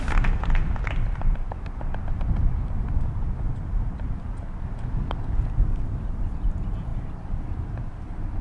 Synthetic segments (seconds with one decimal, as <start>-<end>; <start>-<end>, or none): none